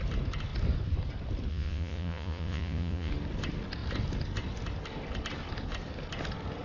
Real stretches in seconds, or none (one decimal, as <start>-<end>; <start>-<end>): 0.0-1.5; 3.1-6.6